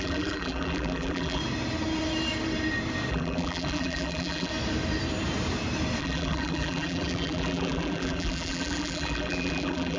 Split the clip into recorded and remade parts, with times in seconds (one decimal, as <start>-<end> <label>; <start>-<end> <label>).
0.0-1.4 remade; 1.4-3.1 recorded; 3.1-4.5 remade; 4.5-6.0 recorded; 6.0-10.0 remade